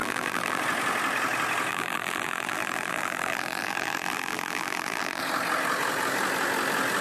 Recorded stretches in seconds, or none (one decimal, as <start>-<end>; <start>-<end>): 0.6-1.7; 5.2-7.0